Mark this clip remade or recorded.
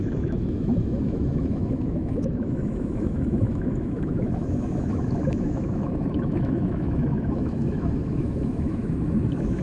remade